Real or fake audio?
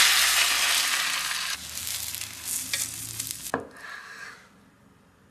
real